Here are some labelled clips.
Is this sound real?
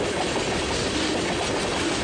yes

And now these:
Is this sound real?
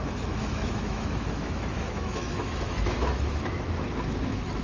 no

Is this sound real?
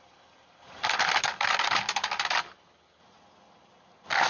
yes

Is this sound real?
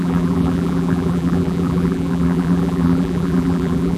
no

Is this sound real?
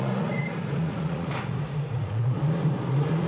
no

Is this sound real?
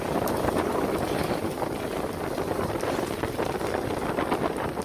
yes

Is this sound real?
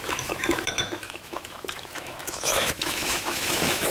no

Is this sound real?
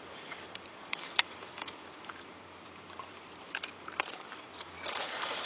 no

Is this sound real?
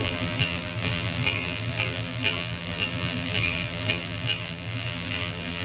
no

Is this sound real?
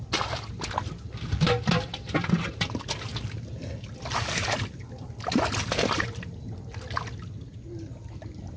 yes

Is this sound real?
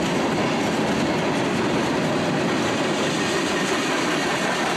yes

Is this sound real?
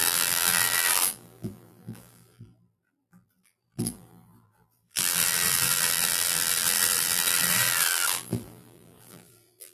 no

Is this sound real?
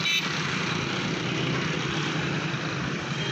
yes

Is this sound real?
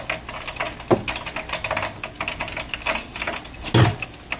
yes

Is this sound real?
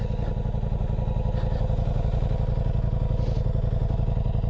yes